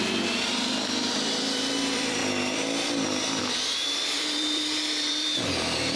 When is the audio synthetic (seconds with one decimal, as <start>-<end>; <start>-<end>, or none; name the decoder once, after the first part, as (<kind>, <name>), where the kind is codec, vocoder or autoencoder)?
0.0-2.2 (vocoder, BigVGAN v2); 3.4-6.0